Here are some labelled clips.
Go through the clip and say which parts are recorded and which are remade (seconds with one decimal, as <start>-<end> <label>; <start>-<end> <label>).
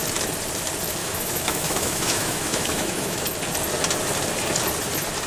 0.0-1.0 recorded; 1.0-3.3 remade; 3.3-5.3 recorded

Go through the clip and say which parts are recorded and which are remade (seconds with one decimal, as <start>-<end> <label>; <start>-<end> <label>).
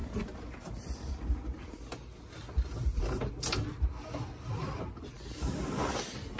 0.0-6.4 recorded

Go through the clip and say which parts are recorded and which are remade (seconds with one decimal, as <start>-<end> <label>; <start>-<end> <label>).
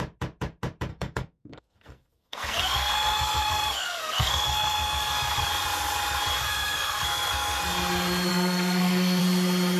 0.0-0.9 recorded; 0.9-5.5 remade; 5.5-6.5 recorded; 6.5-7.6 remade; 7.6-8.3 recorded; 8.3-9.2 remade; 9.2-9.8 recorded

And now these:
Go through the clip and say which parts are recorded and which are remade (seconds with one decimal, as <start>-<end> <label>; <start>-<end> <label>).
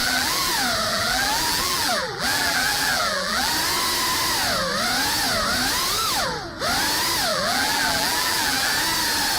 0.0-0.5 remade; 0.5-0.9 recorded; 0.9-3.5 remade; 3.5-7.3 recorded; 7.3-8.7 remade; 8.7-9.4 recorded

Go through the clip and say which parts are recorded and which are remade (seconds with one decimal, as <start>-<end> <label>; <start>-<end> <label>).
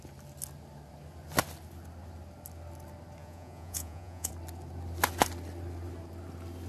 0.0-3.2 recorded; 3.2-4.3 remade; 4.3-6.7 recorded